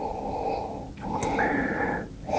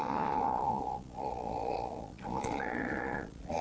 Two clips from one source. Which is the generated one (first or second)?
second